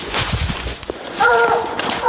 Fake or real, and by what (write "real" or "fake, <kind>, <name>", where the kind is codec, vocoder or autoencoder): fake, vocoder, Vocos